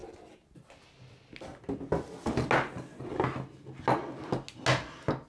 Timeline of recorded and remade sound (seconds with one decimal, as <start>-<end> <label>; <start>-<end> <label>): 0.0-5.3 recorded